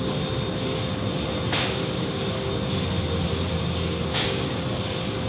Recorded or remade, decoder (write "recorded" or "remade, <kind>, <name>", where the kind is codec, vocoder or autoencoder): recorded